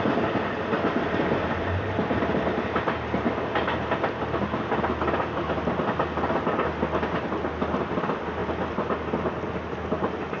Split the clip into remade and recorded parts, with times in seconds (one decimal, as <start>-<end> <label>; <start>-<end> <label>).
0.0-10.4 recorded